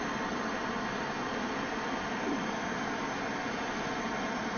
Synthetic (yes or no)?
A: no